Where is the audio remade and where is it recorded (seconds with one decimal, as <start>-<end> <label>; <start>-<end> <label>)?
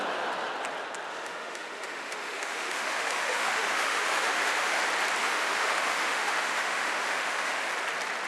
0.0-1.1 recorded; 1.1-4.8 remade; 4.8-5.2 recorded; 5.2-7.7 remade; 7.7-8.3 recorded